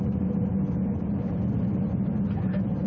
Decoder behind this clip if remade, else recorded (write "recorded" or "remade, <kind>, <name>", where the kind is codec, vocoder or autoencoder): recorded